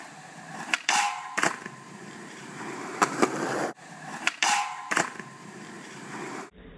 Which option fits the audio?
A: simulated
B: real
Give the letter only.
A